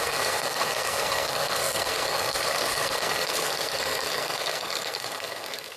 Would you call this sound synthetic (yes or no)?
yes